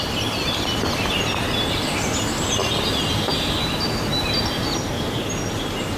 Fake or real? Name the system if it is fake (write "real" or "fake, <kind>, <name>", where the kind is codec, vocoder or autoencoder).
real